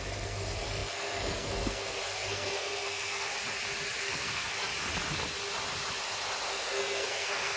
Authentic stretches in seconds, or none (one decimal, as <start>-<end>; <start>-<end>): 3.3-4.0; 4.7-6.5